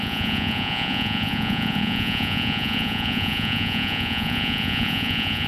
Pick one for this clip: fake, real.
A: fake